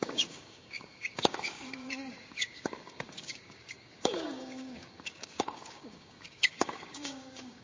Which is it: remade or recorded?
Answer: remade